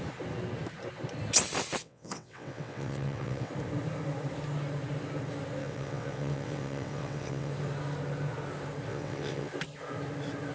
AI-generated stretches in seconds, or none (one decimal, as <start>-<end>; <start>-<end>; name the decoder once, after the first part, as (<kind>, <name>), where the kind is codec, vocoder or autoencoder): 1.8-3.5 (vocoder, WaveNeXt); 5.6-7.5; 8.9-9.5